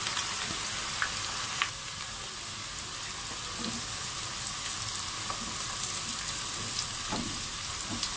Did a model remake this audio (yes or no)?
no